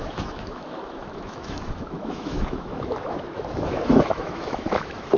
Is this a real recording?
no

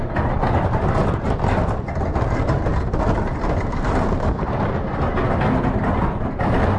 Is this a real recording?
yes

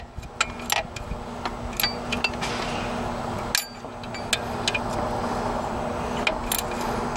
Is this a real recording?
yes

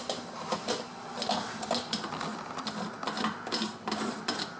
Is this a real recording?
yes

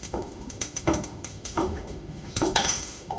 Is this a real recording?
no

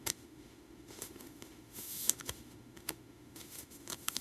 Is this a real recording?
no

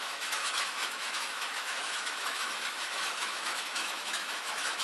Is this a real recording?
no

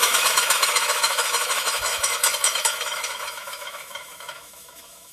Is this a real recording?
no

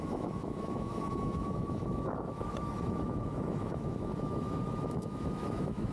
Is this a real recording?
no